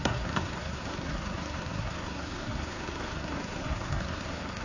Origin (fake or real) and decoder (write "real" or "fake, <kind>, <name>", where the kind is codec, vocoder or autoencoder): fake, codec, SNAC